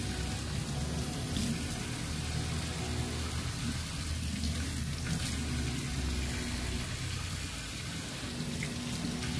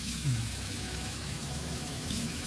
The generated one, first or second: second